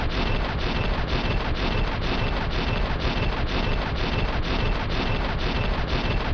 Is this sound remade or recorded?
recorded